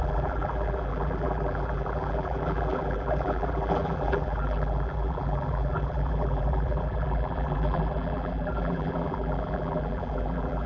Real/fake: fake